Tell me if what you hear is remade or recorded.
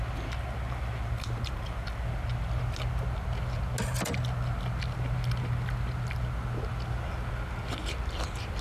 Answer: recorded